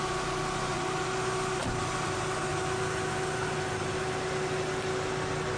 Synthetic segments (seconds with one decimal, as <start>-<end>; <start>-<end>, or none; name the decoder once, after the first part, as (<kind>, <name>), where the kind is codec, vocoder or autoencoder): none